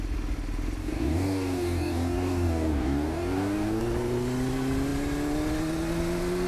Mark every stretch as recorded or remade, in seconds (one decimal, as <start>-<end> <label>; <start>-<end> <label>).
0.0-0.8 recorded; 0.8-3.8 remade; 3.8-6.5 recorded